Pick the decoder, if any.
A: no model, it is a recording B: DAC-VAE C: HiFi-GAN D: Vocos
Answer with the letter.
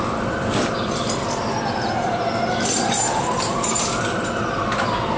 A